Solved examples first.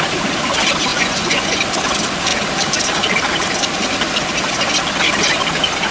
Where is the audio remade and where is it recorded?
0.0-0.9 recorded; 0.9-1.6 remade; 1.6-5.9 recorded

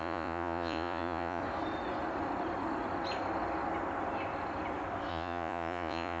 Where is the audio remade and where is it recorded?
0.0-1.4 remade; 1.4-5.1 recorded; 5.1-6.2 remade

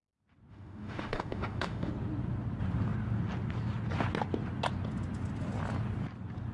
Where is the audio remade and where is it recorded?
0.0-0.5 recorded; 0.5-1.9 remade; 1.9-6.5 recorded

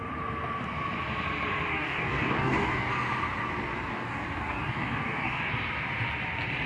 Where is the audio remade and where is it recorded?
0.0-1.7 recorded; 1.7-2.9 remade; 2.9-3.9 recorded; 3.9-5.5 remade; 5.5-6.7 recorded

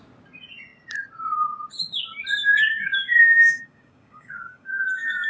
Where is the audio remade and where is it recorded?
0.0-2.5 recorded; 2.5-5.3 remade

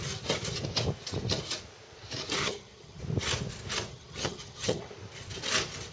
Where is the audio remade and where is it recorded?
0.0-2.4 recorded; 2.4-3.0 remade; 3.0-3.9 recorded; 3.9-4.9 remade; 4.9-5.9 recorded